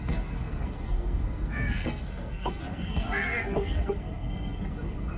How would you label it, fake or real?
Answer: fake